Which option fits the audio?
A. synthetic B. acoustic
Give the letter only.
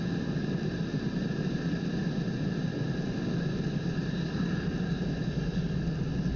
B